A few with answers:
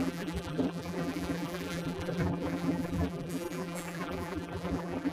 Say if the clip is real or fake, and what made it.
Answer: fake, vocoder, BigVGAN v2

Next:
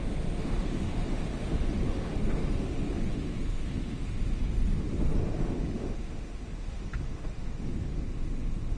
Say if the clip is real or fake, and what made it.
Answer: fake, autoencoder, DAC-VAE